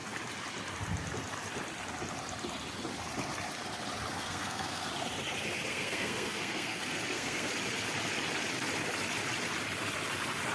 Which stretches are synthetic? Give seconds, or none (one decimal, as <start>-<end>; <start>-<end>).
4.1-4.9; 5.7-7.5